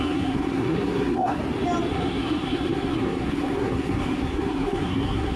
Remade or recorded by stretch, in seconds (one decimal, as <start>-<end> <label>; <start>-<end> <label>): 0.0-1.4 remade; 1.4-1.9 recorded; 1.9-5.4 remade